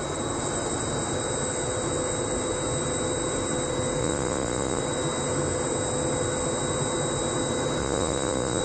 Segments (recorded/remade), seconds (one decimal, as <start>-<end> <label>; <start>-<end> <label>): 0.0-4.0 recorded; 4.0-4.8 remade; 4.8-7.8 recorded; 7.8-8.6 remade

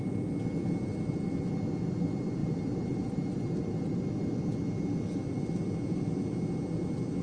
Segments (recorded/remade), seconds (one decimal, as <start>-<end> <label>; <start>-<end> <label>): 0.0-2.4 recorded; 2.4-3.9 remade; 3.9-7.2 recorded

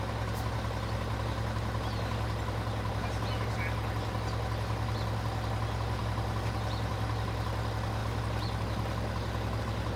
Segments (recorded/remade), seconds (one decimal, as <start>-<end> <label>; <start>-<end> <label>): 0.0-10.0 recorded

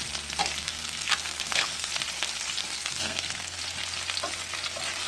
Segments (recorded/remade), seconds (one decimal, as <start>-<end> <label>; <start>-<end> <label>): 0.0-0.6 recorded; 0.6-1.9 remade; 1.9-2.6 recorded; 2.6-3.6 remade; 3.6-5.1 recorded

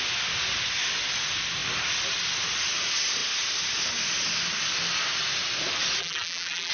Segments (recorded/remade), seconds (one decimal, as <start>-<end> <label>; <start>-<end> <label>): 0.0-6.0 recorded; 6.0-6.7 remade